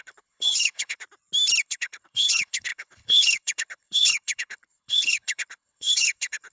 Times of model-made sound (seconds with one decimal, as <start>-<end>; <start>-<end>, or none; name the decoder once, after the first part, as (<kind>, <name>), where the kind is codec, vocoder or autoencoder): 0.0-1.0 (codec, HILCodec); 1.6-6.5